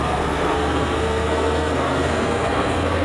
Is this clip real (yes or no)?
no